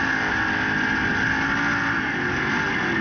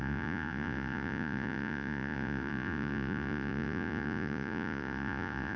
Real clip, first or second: first